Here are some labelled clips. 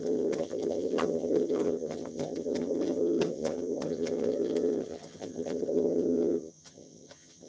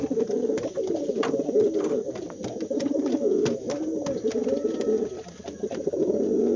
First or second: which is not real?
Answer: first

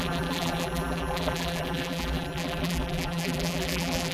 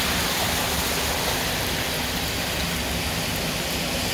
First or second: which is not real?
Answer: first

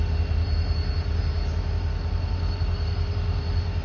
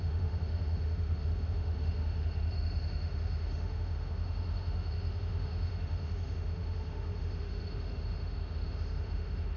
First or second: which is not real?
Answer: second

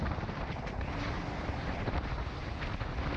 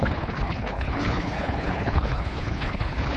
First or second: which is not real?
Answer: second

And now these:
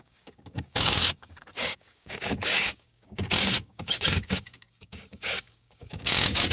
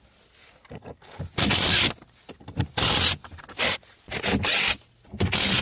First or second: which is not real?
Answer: first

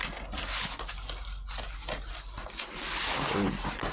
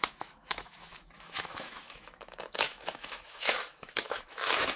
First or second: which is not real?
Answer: second